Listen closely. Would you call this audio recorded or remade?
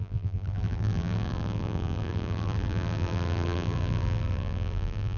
remade